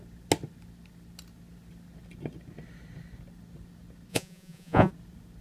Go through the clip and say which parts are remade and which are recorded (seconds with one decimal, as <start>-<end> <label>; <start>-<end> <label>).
0.0-4.1 recorded; 4.1-4.9 remade; 4.9-5.4 recorded